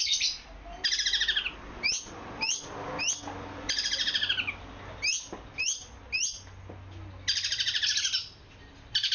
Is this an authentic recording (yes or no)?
yes